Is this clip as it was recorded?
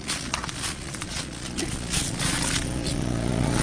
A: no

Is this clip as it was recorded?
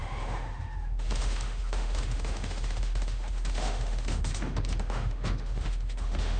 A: no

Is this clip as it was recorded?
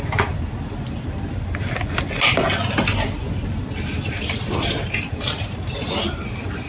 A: yes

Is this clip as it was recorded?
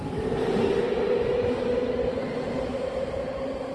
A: yes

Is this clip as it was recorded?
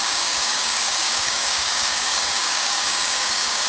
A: no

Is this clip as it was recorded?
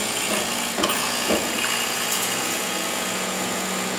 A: no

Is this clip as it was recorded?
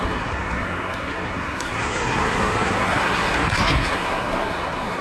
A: no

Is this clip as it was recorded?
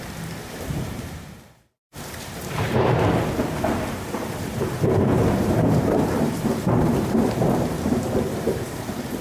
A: no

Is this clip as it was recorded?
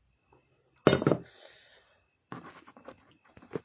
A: yes